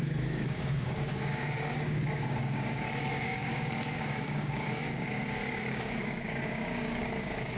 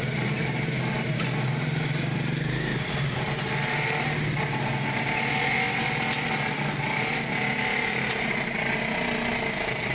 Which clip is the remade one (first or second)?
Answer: first